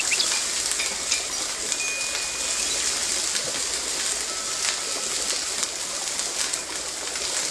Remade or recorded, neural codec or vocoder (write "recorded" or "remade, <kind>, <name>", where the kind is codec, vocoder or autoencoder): recorded